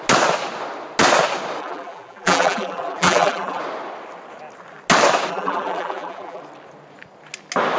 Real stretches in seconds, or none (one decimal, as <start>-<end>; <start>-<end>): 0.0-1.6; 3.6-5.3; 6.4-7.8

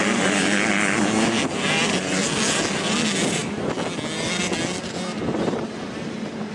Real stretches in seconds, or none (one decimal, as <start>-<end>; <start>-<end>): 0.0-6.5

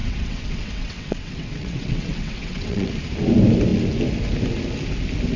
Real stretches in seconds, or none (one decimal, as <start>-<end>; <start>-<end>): 2.9-5.4

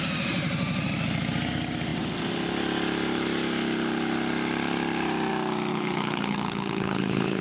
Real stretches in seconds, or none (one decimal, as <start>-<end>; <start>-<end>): 0.0-5.7

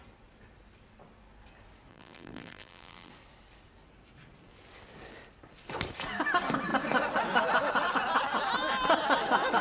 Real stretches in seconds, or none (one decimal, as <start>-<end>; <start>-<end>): 0.0-1.9; 3.1-9.6

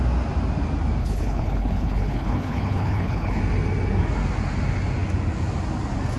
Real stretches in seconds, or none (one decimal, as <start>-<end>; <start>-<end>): 0.0-1.0; 3.4-6.2

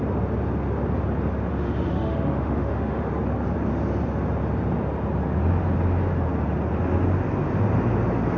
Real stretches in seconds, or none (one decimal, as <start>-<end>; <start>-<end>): 0.0-1.5; 3.1-8.4